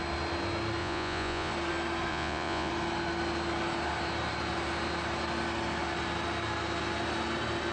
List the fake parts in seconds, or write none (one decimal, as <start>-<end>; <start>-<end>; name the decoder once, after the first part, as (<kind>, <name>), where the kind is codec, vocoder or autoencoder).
0.8-1.5 (vocoder, Vocos); 2.1-2.7